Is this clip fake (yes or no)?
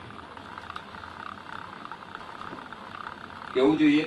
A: no